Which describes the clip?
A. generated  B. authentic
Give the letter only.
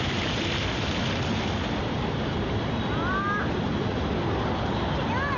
B